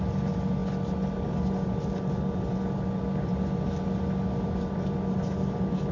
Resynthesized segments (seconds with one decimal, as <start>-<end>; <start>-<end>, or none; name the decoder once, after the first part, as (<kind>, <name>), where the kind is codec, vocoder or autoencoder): none